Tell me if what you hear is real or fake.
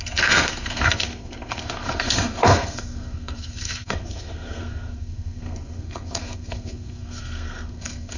fake